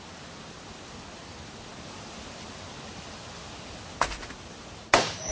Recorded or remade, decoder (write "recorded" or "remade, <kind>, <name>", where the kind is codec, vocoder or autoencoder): recorded